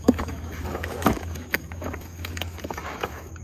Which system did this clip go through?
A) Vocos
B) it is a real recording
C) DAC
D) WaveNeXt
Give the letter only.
C